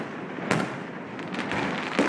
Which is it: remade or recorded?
recorded